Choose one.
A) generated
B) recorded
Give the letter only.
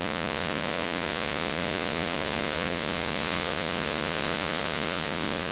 A